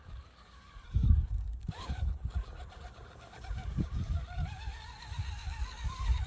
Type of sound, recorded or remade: remade